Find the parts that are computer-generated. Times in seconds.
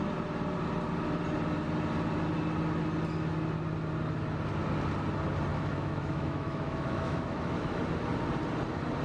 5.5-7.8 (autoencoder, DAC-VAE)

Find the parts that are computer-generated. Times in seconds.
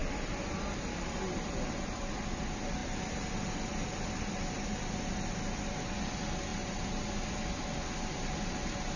0.0-2.2 (vocoder, BigVGAN v2); 2.8-5.3; 6.5-7.6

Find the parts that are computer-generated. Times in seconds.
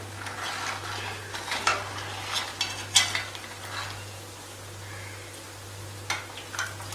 none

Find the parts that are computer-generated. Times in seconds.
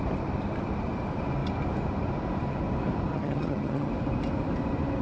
3.1-3.9 (vocoder, HiFi-GAN)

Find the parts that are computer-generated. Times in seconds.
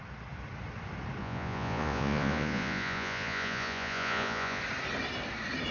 1.2-4.6 (vocoder, Vocos)